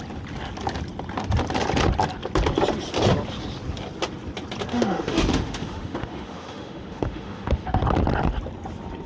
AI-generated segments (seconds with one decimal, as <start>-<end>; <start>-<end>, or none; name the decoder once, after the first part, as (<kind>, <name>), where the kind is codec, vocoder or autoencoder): 4.7-7.8 (autoencoder, DAC-VAE)